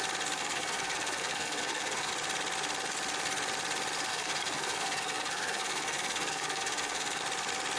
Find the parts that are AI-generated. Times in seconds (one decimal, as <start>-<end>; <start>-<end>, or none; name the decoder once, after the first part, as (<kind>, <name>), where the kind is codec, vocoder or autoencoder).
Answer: 0.4-2.1 (codec, SNAC); 4.1-7.2